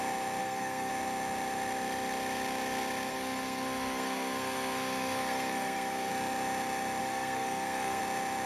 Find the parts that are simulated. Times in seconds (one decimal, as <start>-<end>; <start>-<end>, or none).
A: 0.4-0.9; 3.1-6.1; 7.0-8.0